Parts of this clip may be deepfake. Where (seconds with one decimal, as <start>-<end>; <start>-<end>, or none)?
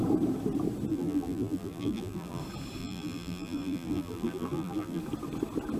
0.9-2.4; 2.8-5.0